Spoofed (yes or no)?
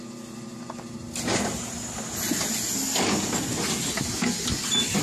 no